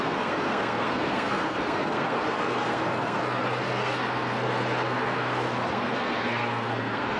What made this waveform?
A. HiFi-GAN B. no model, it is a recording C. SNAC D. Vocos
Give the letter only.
C